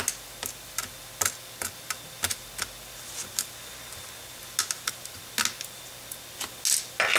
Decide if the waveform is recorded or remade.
recorded